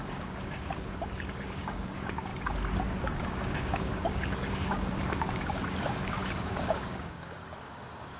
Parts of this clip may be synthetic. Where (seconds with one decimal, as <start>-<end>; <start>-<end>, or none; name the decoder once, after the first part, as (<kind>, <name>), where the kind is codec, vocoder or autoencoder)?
0.0-2.3 (codec, DAC); 3.2-8.2